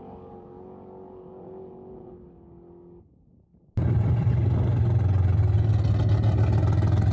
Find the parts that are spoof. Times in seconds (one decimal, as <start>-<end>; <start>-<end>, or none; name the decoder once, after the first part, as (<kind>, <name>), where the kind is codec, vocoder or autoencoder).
3.5-4.3 (vocoder, BigVGAN v2)